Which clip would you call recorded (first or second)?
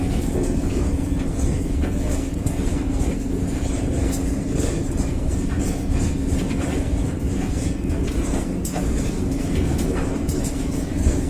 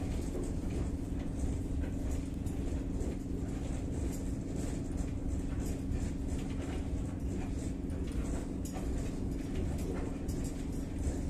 second